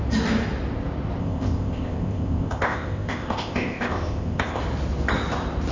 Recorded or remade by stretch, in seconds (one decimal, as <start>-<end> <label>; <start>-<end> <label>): 0.0-1.2 recorded; 1.2-4.6 remade; 4.6-5.7 recorded